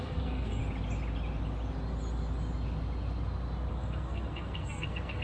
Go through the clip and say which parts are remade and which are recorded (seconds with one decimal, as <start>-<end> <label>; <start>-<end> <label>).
0.0-0.6 remade; 0.6-3.7 recorded; 3.7-5.2 remade